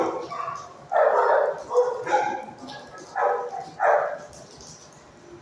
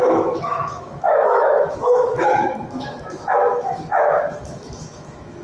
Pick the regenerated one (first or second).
second